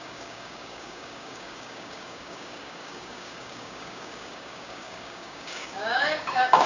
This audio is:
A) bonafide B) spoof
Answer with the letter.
B